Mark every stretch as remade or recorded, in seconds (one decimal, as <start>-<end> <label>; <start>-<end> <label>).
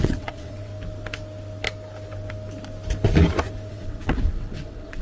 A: 0.0-0.7 remade; 0.7-3.7 recorded; 3.7-5.0 remade